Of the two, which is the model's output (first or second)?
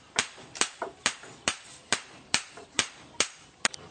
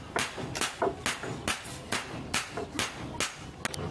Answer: first